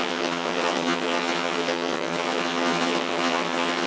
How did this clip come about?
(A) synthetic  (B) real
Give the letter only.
A